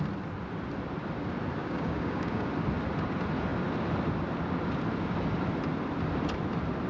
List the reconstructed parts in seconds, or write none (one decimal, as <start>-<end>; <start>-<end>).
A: 1.6-2.5